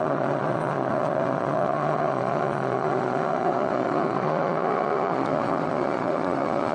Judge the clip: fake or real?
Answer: fake